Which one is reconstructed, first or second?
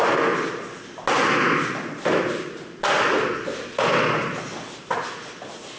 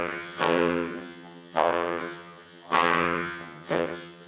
second